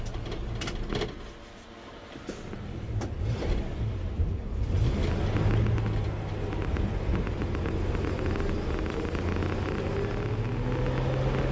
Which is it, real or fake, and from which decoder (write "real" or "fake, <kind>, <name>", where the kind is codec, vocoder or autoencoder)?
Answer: real